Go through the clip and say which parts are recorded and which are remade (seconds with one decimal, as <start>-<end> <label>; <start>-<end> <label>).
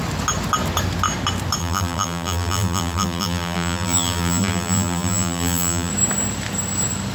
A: 0.0-1.6 recorded; 1.6-5.9 remade; 5.9-7.1 recorded